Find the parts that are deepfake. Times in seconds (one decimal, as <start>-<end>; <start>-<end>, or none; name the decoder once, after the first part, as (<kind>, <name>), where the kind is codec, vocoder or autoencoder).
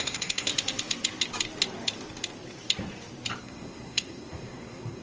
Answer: 0.0-0.5 (codec, SNAC); 3.4-5.0